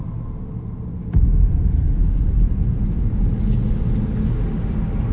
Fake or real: real